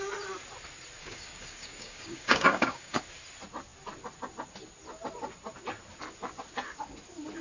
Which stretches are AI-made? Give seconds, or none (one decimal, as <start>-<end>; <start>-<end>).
1.0-3.0